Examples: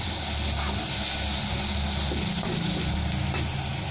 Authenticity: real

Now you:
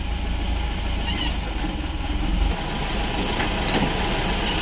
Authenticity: real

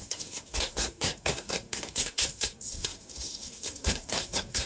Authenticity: fake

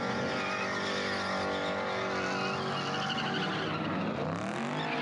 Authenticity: real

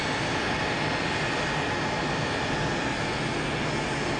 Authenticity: real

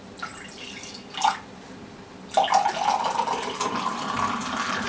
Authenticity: real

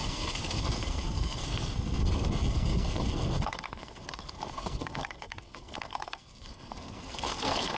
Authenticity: fake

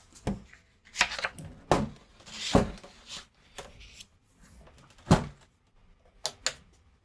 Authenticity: real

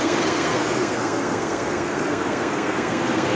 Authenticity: fake